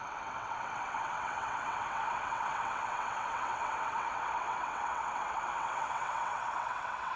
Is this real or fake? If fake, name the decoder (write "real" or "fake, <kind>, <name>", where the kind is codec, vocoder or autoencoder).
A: fake, vocoder, WaveNeXt